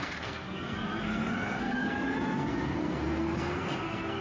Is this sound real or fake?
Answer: fake